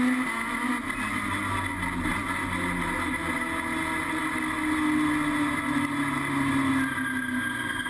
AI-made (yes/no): no